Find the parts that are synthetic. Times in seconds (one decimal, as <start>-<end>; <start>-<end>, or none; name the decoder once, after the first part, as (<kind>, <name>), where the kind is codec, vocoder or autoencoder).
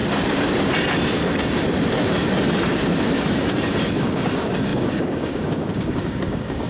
4.0-6.7 (codec, DAC)